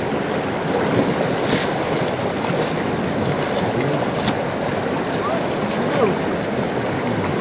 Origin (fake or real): real